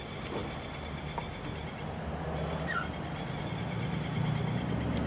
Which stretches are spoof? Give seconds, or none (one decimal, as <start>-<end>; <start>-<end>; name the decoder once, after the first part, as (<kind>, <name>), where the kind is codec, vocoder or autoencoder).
none